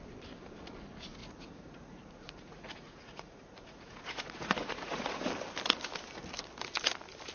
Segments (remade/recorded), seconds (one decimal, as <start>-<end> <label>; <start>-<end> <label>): 0.0-1.2 recorded; 1.2-5.3 remade; 5.3-7.3 recorded